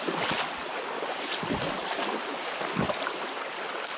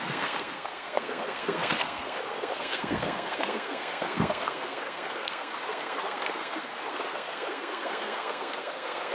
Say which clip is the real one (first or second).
first